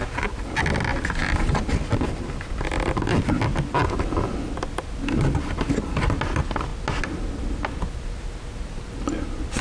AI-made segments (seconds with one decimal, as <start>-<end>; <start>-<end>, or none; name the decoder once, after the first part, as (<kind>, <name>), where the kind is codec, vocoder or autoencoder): none